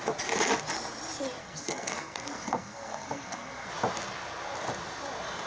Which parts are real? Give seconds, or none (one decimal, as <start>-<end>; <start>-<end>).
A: 0.0-1.4; 3.7-5.5